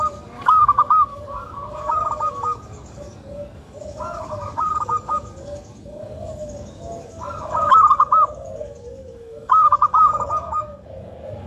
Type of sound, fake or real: fake